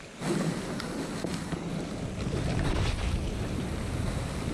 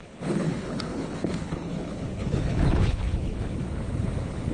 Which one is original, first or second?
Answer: first